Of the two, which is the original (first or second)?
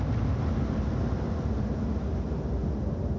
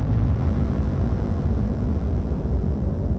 first